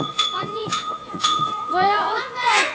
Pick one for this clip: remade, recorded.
remade